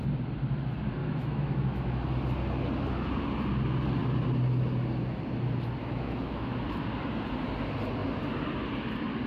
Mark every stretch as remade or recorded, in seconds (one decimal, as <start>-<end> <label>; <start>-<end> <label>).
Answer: 0.0-1.0 recorded; 1.0-2.0 remade; 2.0-5.8 recorded; 5.8-6.5 remade; 6.5-9.3 recorded